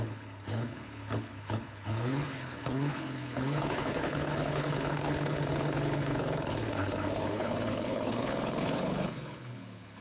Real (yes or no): no